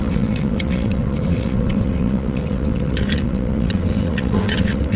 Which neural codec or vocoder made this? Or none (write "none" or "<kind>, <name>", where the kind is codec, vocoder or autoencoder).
vocoder, WaveNeXt